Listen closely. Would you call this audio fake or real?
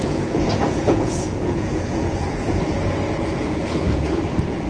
fake